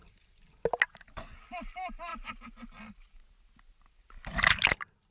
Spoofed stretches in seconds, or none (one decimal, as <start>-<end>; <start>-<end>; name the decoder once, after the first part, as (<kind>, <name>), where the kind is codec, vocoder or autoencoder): none